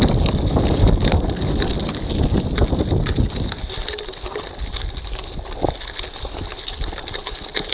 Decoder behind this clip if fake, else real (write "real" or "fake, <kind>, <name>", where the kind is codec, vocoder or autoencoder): real